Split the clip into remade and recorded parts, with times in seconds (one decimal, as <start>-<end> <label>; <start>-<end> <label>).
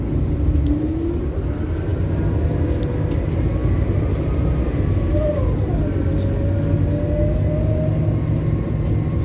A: 0.0-9.2 recorded